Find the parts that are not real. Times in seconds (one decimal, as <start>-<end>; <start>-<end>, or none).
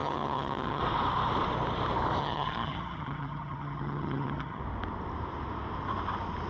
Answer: 0.0-0.8; 2.2-4.6